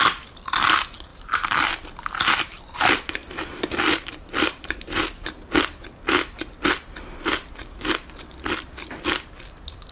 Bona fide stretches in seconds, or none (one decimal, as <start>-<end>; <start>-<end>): 0.0-1.1; 1.9-3.2; 4.4-9.9